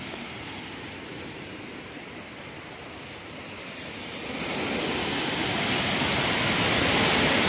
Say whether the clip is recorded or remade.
recorded